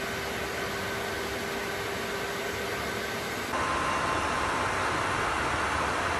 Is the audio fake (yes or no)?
no